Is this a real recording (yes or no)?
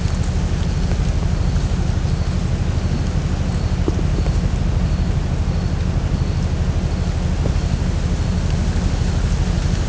yes